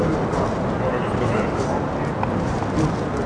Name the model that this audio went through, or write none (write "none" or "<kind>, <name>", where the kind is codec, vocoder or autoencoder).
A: none